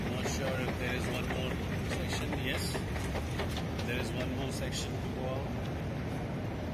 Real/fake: real